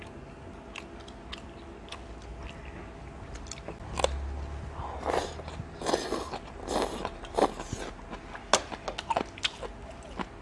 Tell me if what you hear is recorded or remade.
recorded